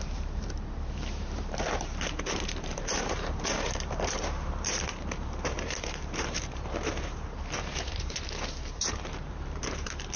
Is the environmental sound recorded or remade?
remade